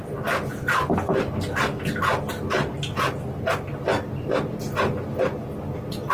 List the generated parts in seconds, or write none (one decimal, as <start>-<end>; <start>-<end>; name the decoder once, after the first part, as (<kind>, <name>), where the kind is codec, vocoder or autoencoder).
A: none